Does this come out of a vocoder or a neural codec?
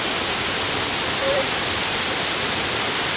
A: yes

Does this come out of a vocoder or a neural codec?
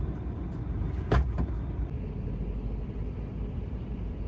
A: no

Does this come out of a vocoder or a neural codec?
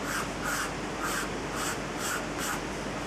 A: no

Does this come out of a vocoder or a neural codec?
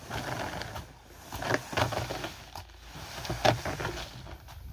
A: no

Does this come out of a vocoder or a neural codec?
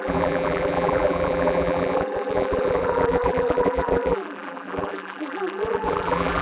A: yes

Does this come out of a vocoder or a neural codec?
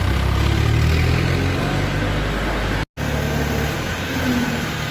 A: no